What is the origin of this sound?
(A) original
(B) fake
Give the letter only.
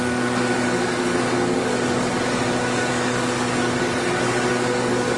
B